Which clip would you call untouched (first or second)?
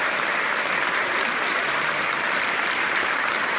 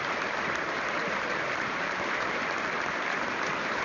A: first